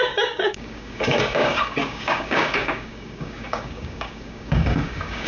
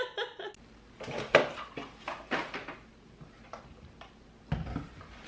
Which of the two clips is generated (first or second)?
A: first